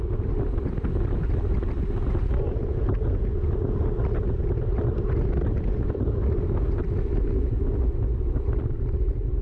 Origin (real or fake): real